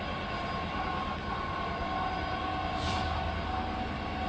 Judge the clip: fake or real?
real